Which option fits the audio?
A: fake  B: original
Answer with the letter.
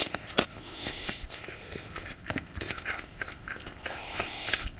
A